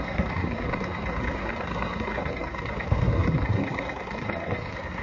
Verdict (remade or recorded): remade